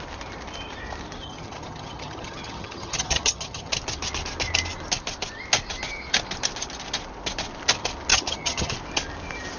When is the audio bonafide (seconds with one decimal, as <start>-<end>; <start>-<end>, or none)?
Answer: 0.0-1.2; 3.7-8.1; 8.7-9.6